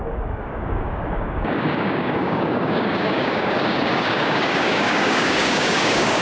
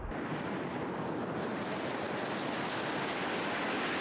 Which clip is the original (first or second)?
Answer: second